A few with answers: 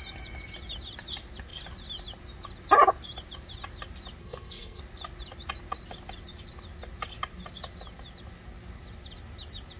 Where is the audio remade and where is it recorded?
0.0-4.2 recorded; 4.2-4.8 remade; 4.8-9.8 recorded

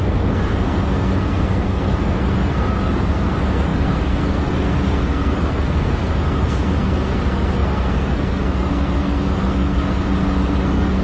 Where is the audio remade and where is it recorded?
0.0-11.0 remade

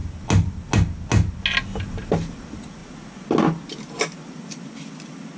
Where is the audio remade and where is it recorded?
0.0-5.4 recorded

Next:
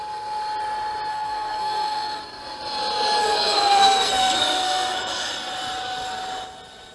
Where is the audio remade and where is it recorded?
0.0-1.1 recorded; 1.1-2.2 remade; 2.2-3.2 recorded; 3.2-5.3 remade; 5.3-6.9 recorded